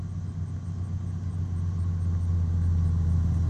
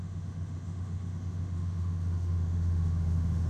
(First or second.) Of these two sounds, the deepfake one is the second